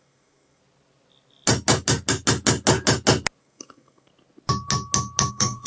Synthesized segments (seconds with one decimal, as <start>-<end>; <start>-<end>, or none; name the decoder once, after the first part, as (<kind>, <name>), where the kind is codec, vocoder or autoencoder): 0.0-0.6 (codec, SNAC); 3.4-4.1; 5.3-5.7